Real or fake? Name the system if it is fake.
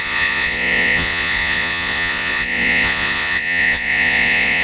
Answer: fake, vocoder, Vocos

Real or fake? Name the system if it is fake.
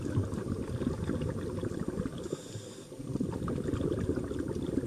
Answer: real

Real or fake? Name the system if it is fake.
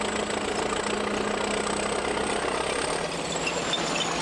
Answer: real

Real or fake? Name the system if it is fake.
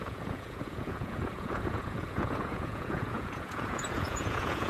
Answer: fake, vocoder, Vocos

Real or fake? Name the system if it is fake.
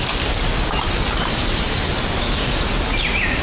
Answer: real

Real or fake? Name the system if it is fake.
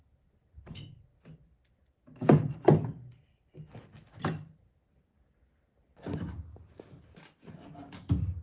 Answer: real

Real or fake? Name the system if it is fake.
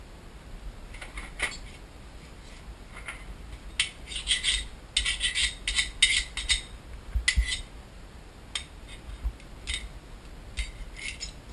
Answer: real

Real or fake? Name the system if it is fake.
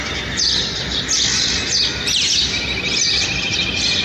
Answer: real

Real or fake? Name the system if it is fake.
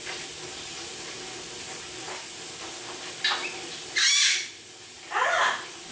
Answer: real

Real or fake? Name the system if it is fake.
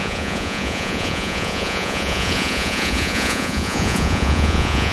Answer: fake, vocoder, Vocos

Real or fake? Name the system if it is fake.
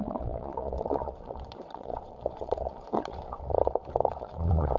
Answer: fake, vocoder, Vocos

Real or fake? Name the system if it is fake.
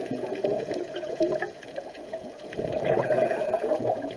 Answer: fake, vocoder, Vocos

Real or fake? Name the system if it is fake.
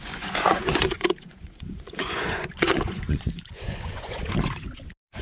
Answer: fake, vocoder, Vocos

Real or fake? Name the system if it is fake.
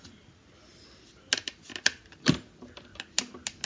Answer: real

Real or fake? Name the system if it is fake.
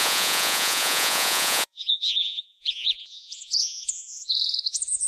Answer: fake, vocoder, Vocos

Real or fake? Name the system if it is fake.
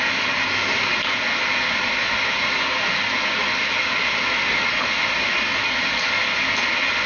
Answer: real